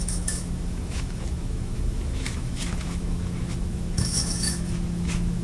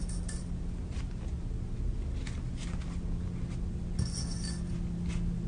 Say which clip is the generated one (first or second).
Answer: first